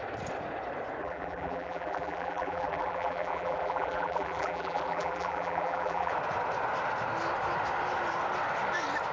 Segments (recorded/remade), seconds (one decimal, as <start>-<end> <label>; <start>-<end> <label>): 0.0-1.0 recorded; 1.0-6.1 remade; 6.1-9.1 recorded